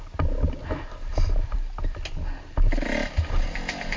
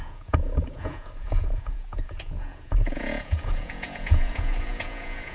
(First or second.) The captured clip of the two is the first